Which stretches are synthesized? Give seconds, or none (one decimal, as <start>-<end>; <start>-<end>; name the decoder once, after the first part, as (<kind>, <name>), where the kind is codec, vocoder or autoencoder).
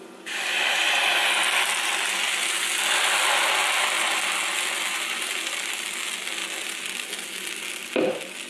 none